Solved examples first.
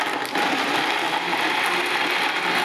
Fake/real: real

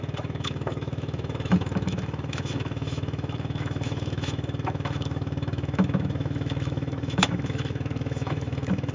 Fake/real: fake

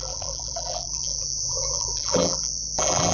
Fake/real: fake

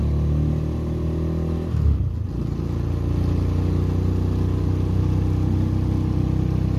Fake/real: real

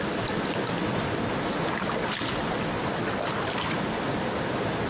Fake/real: real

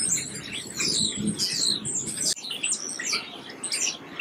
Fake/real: real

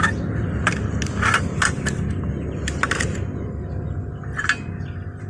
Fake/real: real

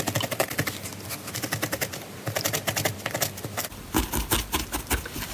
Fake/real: real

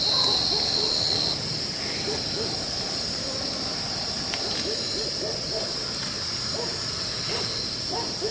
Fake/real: real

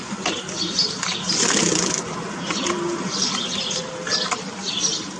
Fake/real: fake